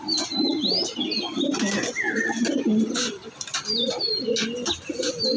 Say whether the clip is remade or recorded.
recorded